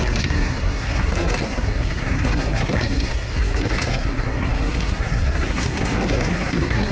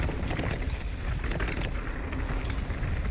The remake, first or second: first